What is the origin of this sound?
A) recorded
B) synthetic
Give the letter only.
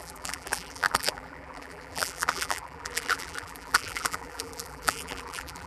B